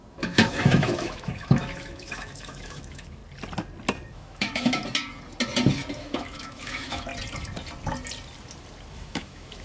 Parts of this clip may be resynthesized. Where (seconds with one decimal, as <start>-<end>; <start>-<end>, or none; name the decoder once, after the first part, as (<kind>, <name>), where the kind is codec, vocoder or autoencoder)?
0.0-3.2 (autoencoder, DAC-VAE); 4.1-4.8; 6.0-7.1; 8.9-9.6